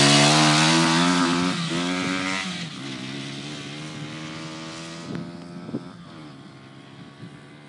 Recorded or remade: recorded